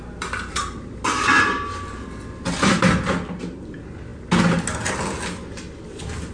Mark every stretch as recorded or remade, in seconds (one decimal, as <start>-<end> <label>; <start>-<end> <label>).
0.0-6.3 recorded